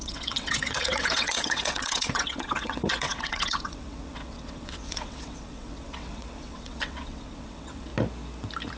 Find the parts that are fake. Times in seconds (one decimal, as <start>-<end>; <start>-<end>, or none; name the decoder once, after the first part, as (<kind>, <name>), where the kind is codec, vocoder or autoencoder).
0.0-7.9 (vocoder, WaveNeXt)